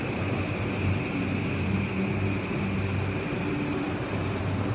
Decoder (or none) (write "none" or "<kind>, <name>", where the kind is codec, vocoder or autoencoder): vocoder, BigVGAN v2